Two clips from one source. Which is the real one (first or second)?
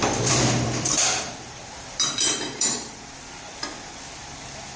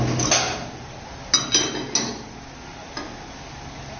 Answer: second